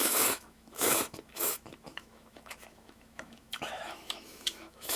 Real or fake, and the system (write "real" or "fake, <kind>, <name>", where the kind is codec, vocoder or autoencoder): fake, autoencoder, DAC-VAE